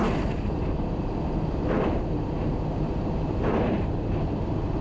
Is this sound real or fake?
fake